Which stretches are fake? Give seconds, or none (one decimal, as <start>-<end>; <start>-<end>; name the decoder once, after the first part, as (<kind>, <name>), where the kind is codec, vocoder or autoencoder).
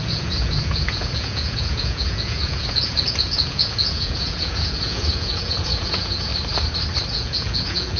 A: 0.0-6.3 (vocoder, Vocos); 7.1-8.0